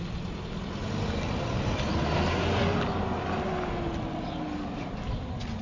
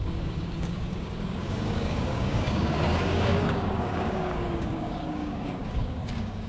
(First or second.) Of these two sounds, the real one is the first